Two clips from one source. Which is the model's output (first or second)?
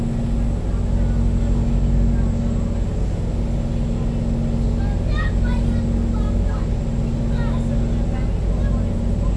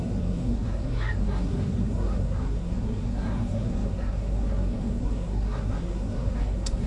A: second